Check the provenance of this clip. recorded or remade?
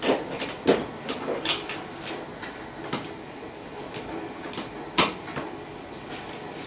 recorded